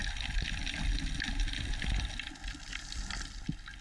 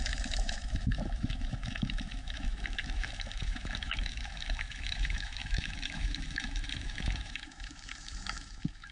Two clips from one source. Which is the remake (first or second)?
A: second